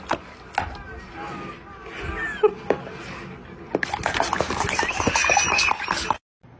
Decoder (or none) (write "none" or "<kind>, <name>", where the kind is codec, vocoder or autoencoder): none